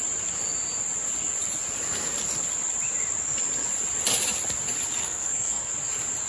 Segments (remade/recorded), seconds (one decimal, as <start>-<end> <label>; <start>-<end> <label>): 0.0-5.0 recorded; 5.0-5.7 remade; 5.7-6.3 recorded